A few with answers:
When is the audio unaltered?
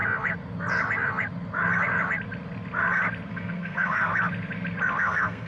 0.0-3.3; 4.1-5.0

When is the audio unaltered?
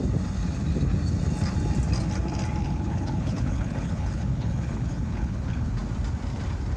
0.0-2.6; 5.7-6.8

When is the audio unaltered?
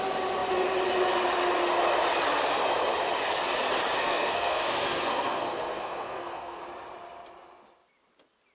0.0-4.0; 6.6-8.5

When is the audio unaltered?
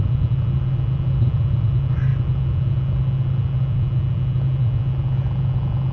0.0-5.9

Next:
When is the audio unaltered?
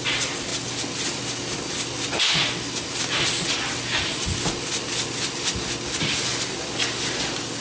0.0-7.6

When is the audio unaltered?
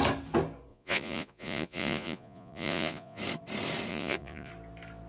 0.0-0.7; 3.2-3.9; 4.5-5.1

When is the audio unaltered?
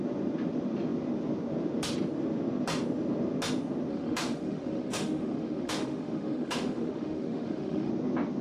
0.0-3.9; 7.9-8.4